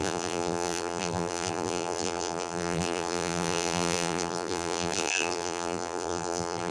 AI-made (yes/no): yes